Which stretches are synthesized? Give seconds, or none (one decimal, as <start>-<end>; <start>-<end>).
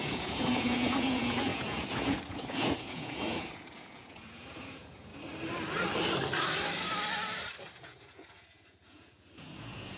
0.0-5.1; 7.7-10.0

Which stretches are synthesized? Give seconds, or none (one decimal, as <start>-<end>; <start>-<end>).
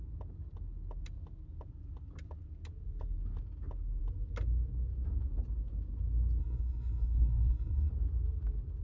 6.4-7.9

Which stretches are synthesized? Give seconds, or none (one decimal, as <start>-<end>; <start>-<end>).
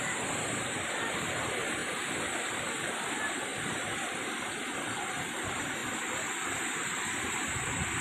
none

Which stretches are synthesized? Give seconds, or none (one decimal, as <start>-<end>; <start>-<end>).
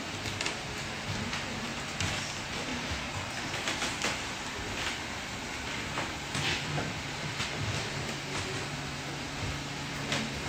none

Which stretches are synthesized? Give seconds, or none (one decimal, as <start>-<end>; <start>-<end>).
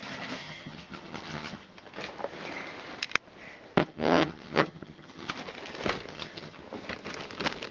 0.4-1.9; 3.8-5.3; 6.1-6.6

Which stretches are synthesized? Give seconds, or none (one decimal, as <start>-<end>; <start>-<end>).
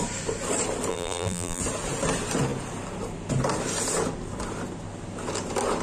0.9-1.6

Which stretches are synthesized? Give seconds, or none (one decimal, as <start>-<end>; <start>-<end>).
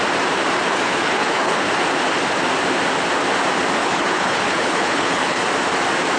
0.7-1.7; 3.8-5.4